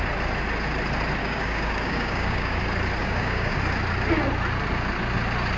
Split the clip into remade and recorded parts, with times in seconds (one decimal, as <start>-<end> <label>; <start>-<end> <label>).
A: 0.0-1.2 recorded; 1.2-2.6 remade; 2.6-3.0 recorded; 3.0-3.6 remade; 3.6-5.6 recorded